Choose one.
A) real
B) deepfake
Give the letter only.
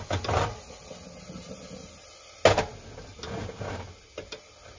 A